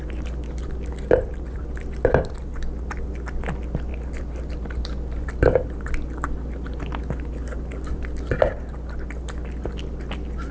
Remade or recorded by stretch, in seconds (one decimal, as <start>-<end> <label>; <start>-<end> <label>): 0.0-10.5 recorded